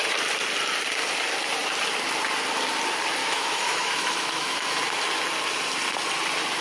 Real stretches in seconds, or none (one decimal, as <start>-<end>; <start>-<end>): 0.0-3.2; 4.8-6.6